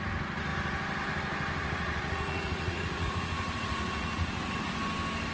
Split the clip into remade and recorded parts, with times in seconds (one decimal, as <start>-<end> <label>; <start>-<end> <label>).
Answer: 0.0-1.6 recorded; 1.6-4.8 remade; 4.8-5.3 recorded